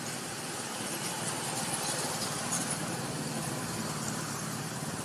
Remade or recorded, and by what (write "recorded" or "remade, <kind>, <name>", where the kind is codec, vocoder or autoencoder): recorded